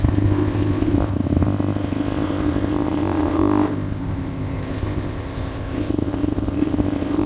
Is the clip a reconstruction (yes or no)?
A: yes